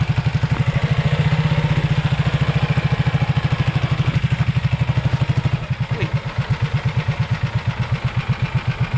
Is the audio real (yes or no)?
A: yes